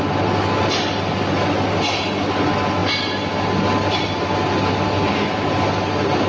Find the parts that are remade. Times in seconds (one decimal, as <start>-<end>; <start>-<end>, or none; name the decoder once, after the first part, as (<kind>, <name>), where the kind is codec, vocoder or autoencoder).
none